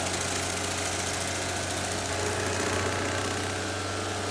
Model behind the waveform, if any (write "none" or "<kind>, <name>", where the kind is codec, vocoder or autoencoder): none